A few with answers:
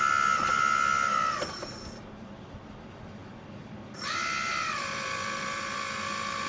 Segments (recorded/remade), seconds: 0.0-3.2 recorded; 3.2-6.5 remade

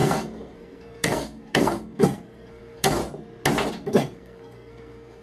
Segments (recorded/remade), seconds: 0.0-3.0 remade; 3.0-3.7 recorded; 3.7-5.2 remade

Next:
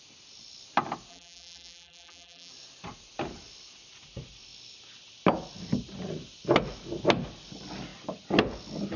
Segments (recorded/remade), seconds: 0.0-1.1 recorded; 1.1-2.5 remade; 2.5-9.0 recorded